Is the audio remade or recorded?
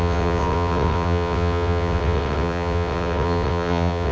remade